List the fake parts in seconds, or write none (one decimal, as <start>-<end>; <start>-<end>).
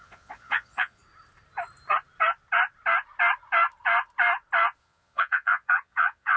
0.0-1.0; 4.8-6.4